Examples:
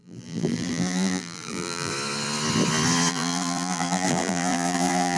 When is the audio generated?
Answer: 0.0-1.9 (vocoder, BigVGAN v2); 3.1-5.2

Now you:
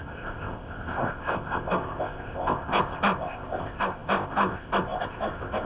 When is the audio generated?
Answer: 0.0-5.7 (codec, ZipCodec)